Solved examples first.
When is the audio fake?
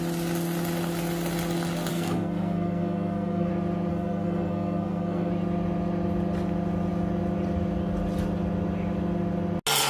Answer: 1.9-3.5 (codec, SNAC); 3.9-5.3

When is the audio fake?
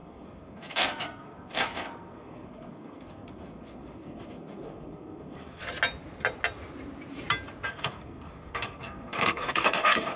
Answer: 0.0-5.6 (codec, SNAC); 7.7-10.2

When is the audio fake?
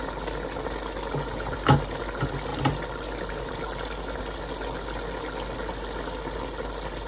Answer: none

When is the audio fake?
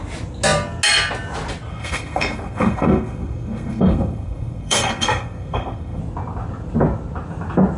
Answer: 1.7-6.0 (codec, SNAC)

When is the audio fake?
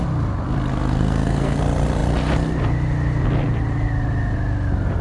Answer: 0.7-1.6 (codec, SNAC)